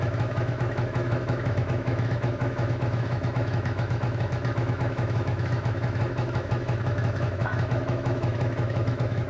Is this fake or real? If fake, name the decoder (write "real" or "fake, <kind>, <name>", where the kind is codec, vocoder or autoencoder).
fake, autoencoder, DAC-VAE